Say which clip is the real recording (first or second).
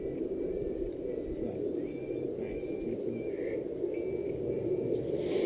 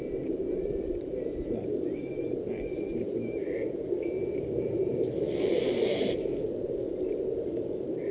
first